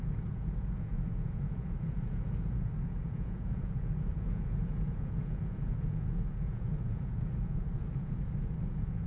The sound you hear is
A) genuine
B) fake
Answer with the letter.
B